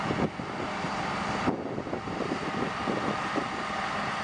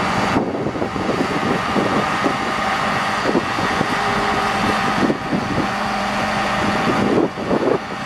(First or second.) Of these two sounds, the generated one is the second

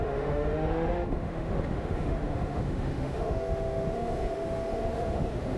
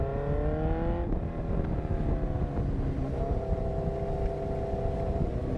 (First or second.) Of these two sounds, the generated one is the first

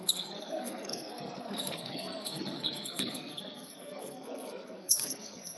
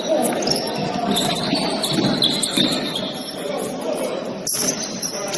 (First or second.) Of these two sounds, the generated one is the first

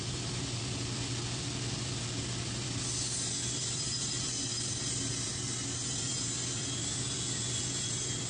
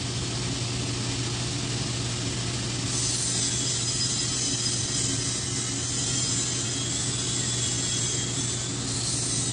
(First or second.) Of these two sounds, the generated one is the first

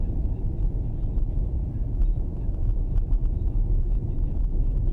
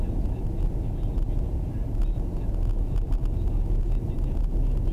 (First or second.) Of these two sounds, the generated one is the first